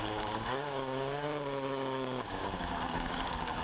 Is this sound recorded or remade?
remade